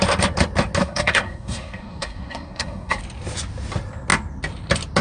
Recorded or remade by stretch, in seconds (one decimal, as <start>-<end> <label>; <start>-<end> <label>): 0.0-0.8 recorded; 0.8-3.0 remade; 3.0-5.0 recorded